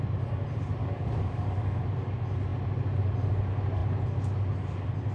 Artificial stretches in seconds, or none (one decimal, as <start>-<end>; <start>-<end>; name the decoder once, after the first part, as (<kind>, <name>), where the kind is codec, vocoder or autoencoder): 0.8-1.8 (codec, DAC)